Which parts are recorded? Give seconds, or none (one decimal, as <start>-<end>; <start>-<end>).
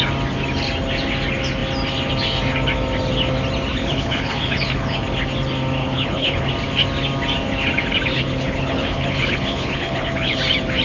0.0-3.7; 5.0-5.8; 6.5-8.1; 10.4-10.8